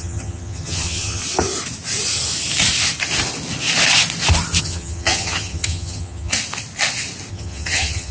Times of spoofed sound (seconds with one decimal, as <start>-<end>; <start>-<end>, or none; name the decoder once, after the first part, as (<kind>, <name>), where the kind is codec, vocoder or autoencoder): 0.0-1.2 (vocoder, HiFi-GAN); 4.6-6.3; 7.3-8.1